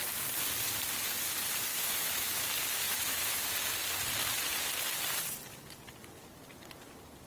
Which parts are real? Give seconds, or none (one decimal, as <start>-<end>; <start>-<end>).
0.0-1.7; 2.4-2.8; 3.3-7.3